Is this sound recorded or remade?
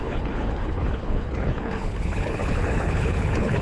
remade